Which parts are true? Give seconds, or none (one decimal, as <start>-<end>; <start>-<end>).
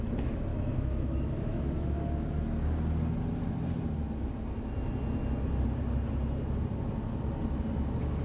0.0-0.5; 1.7-8.2